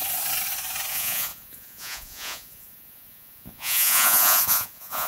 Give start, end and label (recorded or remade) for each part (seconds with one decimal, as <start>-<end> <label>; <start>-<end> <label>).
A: 0.0-0.9 recorded; 0.9-5.1 remade